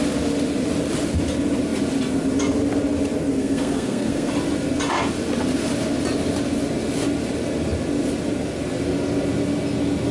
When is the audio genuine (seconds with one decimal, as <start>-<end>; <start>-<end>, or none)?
0.0-3.4; 4.3-10.1